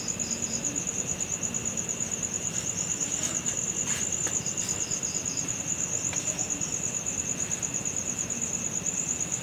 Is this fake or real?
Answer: real